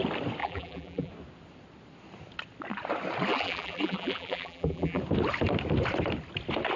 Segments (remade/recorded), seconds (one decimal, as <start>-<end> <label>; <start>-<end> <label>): 0.0-0.4 recorded; 0.4-1.1 remade; 1.1-3.3 recorded; 3.3-5.0 remade; 5.0-6.8 recorded